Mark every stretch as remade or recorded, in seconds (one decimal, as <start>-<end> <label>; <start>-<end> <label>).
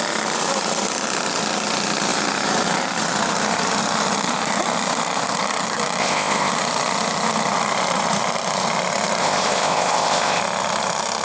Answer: 0.0-6.0 recorded; 6.0-6.5 remade; 6.5-9.2 recorded; 9.2-10.4 remade; 10.4-11.2 recorded